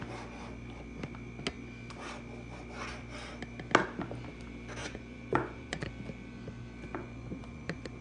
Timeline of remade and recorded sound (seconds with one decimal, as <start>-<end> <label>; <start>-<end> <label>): 0.0-4.8 recorded; 4.8-5.9 remade; 5.9-6.9 recorded; 6.9-8.0 remade